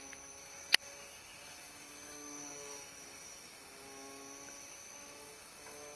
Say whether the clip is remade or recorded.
remade